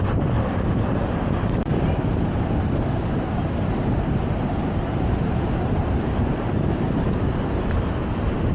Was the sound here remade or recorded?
remade